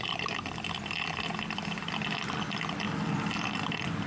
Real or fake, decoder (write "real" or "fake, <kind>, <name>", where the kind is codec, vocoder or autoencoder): real